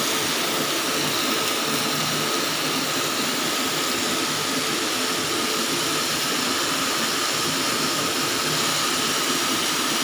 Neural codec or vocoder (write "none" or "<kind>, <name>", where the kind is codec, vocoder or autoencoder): none